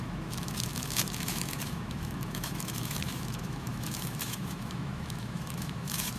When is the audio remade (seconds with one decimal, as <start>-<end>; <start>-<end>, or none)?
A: 0.0-6.2